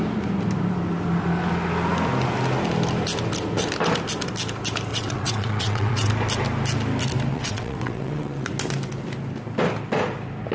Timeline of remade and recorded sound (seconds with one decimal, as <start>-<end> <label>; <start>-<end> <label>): 0.0-4.9 recorded; 4.9-6.1 remade; 6.1-7.3 recorded; 7.3-8.5 remade; 8.5-10.5 recorded

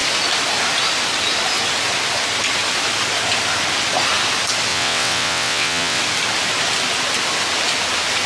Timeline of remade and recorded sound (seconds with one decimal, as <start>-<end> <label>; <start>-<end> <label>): 0.0-4.7 recorded; 4.7-6.0 remade; 6.0-8.3 recorded